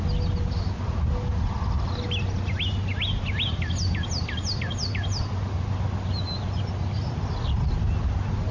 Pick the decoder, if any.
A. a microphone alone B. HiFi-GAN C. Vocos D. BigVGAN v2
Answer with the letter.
A